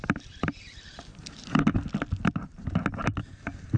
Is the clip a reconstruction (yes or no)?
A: no